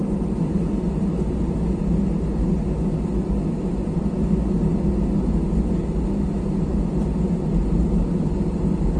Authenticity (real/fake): real